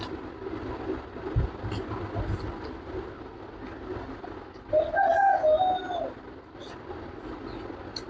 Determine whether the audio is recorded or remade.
recorded